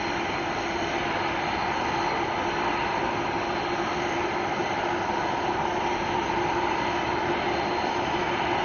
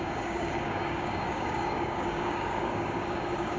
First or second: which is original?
first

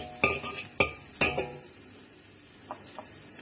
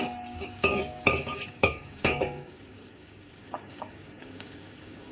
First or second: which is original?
first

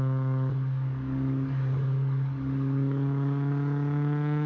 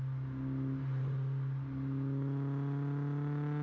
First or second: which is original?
second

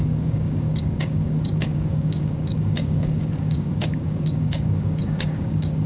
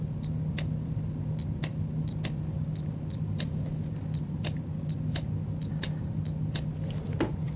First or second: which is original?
second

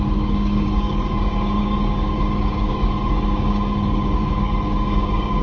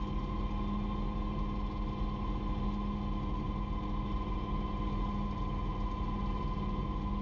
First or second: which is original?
second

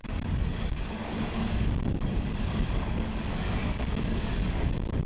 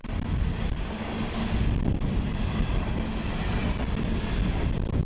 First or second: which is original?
second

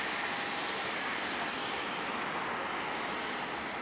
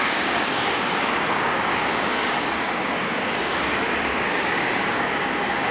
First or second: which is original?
first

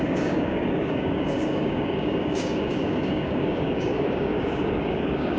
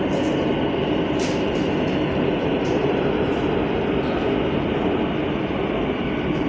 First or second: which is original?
second